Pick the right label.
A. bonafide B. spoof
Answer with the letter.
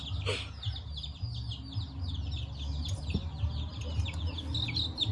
A